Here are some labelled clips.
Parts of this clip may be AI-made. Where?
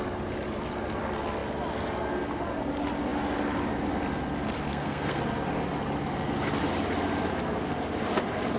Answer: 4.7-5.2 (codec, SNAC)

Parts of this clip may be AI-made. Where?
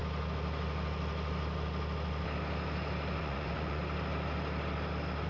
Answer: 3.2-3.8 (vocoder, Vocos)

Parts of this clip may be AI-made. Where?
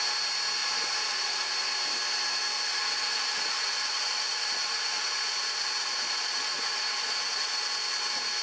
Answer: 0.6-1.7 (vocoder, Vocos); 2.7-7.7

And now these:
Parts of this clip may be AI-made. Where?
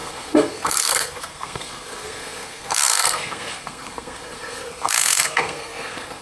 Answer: 0.0-6.2 (codec, SNAC)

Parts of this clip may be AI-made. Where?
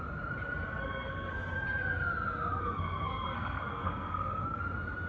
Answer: 0.8-1.3 (codec, SNAC); 2.6-4.6